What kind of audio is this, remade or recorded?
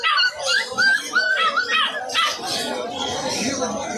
recorded